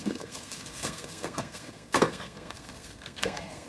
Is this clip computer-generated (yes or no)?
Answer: yes